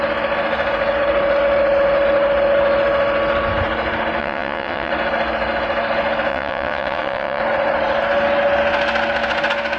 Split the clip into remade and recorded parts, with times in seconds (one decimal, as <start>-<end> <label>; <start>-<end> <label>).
0.0-4.2 recorded; 4.2-4.9 remade; 4.9-6.3 recorded; 6.3-7.4 remade; 7.4-9.8 recorded